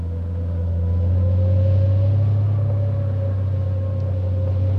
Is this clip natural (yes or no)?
yes